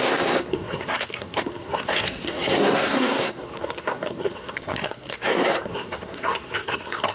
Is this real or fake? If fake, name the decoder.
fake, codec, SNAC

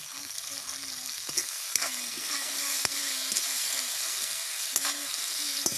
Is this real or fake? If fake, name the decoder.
fake, codec, SNAC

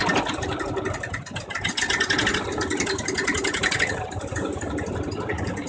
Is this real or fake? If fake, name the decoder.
real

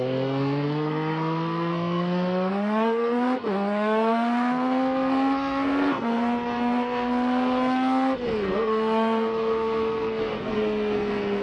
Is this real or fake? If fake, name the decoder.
fake, codec, SNAC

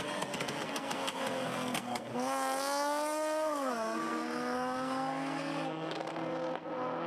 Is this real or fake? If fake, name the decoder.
fake, codec, SNAC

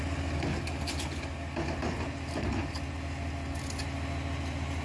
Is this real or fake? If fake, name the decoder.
real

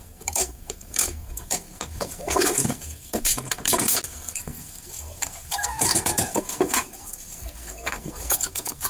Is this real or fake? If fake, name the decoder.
fake, codec, SNAC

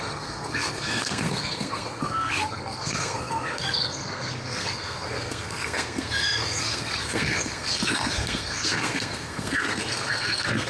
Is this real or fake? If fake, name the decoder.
fake, codec, SNAC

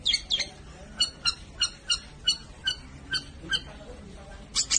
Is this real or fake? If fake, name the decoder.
real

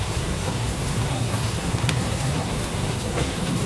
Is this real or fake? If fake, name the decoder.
fake, codec, SNAC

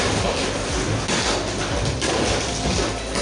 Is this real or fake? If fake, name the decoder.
real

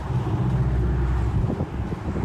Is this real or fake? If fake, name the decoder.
real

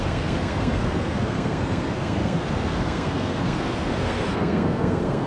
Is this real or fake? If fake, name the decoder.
fake, codec, SNAC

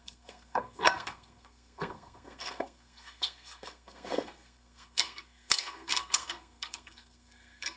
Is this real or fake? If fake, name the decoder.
fake, codec, SNAC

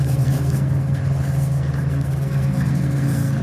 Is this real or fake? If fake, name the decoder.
fake, codec, SNAC